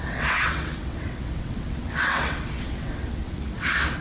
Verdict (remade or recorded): remade